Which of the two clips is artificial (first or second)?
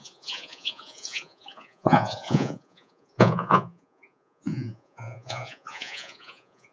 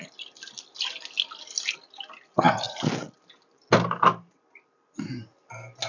first